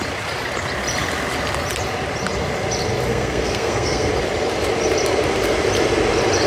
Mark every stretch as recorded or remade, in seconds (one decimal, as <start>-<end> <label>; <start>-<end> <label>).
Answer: 0.0-3.1 recorded; 3.1-4.1 remade; 4.1-6.5 recorded